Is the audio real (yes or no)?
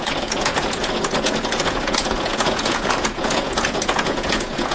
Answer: no